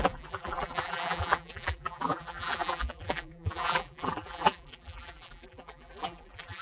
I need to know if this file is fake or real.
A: fake